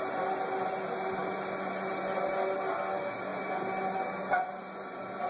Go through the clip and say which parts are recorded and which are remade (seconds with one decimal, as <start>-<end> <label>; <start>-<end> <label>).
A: 0.0-5.3 recorded